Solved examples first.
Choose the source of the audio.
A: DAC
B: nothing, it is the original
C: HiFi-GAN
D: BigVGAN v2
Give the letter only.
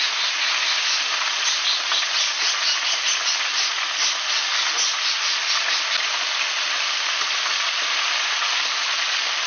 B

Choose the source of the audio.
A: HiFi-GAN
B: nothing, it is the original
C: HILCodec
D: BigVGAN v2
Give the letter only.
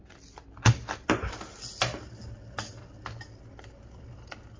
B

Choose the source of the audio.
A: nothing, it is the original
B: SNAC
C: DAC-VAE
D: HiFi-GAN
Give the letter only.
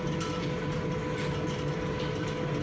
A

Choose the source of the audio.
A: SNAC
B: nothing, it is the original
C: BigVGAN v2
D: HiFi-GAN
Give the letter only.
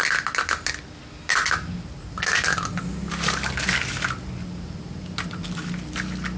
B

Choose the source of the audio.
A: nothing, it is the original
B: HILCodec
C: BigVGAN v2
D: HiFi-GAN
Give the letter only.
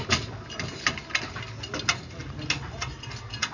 A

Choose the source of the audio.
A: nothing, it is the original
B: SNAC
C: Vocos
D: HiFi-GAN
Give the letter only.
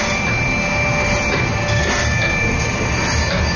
A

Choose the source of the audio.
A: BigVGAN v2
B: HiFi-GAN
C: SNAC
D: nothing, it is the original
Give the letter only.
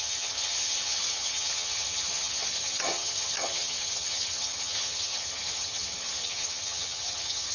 B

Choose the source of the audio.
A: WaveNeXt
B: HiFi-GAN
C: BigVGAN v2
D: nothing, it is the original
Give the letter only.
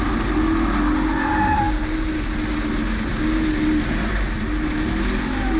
D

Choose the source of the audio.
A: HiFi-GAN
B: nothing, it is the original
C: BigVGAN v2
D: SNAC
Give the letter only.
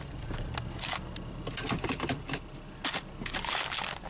B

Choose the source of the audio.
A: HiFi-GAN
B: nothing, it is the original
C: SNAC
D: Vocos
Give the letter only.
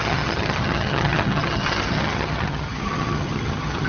A